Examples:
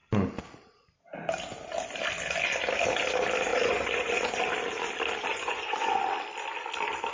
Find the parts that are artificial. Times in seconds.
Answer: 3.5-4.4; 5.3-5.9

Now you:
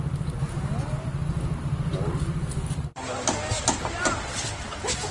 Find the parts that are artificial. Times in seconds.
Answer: none